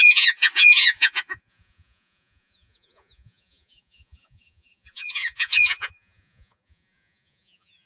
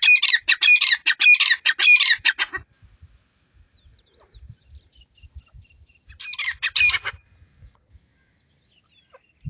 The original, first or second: second